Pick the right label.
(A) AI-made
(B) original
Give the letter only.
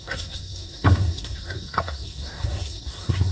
A